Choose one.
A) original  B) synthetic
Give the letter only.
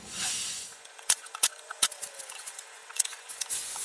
B